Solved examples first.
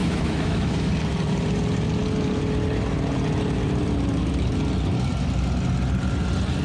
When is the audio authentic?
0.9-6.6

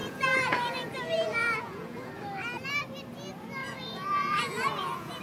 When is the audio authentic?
2.1-3.6